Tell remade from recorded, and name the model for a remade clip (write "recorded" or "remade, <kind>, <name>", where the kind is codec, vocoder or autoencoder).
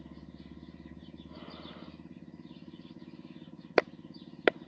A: recorded